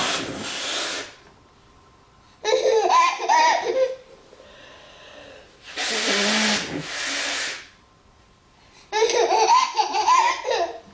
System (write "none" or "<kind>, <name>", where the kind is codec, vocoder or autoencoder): none